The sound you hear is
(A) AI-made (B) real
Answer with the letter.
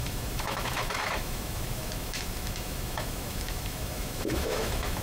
A